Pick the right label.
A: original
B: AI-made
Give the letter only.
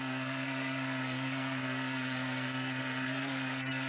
B